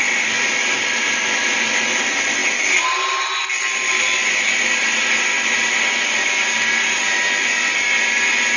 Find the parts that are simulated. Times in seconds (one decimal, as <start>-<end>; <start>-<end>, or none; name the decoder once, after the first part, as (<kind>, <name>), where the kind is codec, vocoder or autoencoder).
none